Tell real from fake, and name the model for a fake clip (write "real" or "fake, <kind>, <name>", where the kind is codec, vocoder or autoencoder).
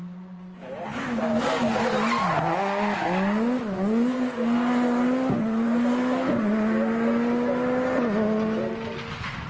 real